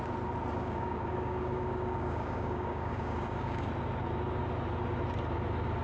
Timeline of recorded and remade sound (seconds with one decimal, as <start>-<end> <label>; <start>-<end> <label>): 0.0-0.5 recorded; 0.5-3.7 remade; 3.7-5.8 recorded